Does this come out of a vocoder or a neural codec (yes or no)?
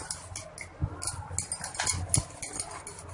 no